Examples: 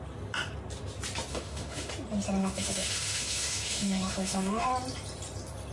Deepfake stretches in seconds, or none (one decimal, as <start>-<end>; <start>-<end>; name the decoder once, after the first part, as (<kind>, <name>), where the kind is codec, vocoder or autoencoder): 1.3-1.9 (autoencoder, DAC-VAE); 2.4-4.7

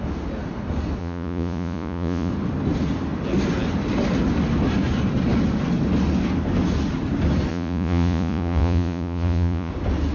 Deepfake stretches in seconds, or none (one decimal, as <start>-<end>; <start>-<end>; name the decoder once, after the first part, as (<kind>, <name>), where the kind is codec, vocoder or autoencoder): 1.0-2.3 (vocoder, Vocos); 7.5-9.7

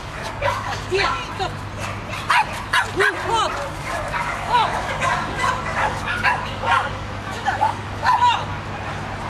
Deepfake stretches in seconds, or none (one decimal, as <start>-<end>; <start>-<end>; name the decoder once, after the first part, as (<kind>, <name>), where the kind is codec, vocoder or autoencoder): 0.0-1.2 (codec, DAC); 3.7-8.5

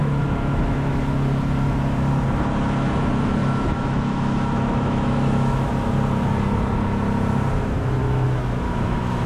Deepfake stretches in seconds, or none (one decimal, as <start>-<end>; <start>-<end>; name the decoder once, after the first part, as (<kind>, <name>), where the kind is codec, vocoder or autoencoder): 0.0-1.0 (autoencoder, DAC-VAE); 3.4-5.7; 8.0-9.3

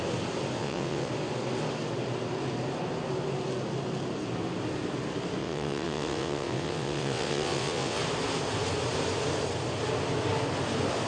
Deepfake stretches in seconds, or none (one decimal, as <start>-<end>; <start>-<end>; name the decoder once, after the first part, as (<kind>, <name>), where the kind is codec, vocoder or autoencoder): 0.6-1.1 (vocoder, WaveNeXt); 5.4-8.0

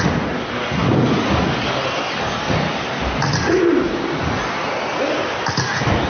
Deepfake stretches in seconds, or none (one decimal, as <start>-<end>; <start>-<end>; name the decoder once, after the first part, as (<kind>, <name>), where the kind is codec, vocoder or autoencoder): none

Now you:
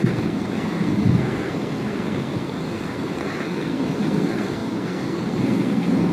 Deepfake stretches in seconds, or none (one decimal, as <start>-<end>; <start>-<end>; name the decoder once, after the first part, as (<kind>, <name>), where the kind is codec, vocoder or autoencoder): 0.0-6.1 (codec, SNAC)

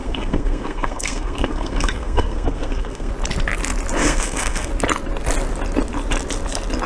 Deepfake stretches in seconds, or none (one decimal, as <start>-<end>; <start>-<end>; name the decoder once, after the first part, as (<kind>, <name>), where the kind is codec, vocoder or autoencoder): 0.0-3.1 (codec, SNAC); 4.0-4.7